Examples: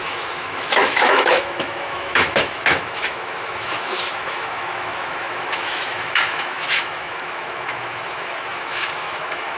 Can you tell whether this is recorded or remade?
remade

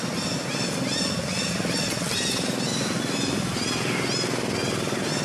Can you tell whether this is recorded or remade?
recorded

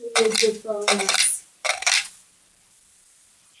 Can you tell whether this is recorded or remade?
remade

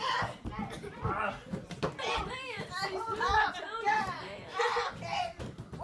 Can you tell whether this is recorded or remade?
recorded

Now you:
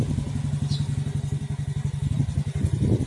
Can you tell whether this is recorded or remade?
recorded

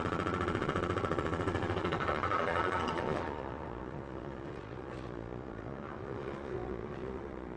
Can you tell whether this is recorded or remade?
remade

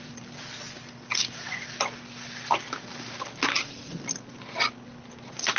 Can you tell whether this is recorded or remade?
recorded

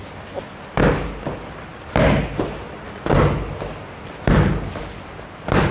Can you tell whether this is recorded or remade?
recorded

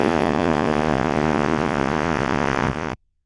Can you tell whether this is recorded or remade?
remade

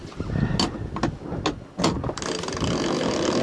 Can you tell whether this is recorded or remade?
recorded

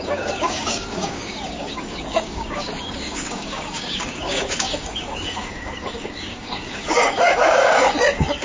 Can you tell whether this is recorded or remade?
remade